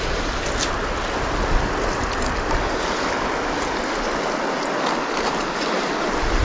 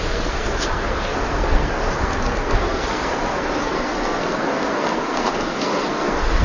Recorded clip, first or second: first